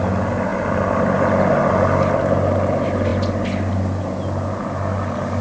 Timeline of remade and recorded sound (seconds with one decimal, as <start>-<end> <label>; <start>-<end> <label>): 0.0-5.4 recorded